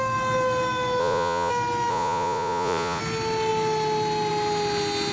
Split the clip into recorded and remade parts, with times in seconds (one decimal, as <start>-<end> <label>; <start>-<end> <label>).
0.0-1.0 recorded; 1.0-1.5 remade; 1.5-1.9 recorded; 1.9-3.0 remade; 3.0-5.1 recorded